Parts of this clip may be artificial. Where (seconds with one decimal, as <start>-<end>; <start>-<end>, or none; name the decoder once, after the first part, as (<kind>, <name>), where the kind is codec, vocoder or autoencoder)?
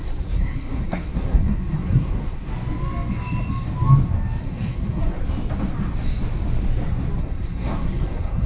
0.0-2.5 (codec, SNAC); 4.4-5.2; 7.2-8.5